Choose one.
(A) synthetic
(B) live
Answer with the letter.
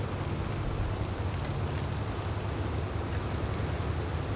B